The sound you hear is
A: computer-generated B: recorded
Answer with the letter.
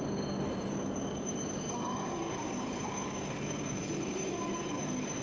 A